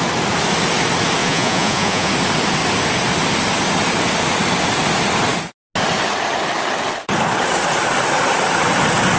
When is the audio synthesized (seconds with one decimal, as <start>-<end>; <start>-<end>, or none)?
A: 1.2-2.1